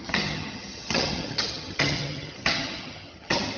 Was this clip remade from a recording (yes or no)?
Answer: yes